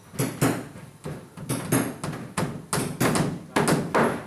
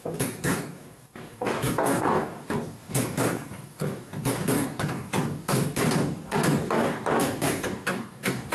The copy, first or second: second